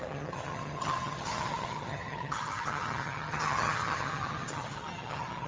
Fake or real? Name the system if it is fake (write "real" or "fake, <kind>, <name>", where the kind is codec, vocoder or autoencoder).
fake, vocoder, HiFi-GAN